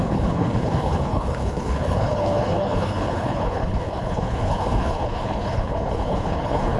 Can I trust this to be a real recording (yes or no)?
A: no